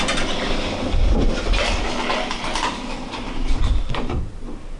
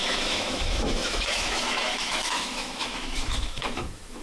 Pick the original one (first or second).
first